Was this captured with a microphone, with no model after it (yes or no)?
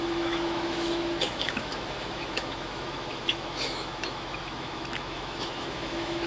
no